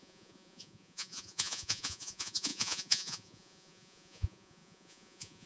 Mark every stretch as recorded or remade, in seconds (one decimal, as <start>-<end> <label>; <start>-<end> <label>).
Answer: 0.0-5.5 remade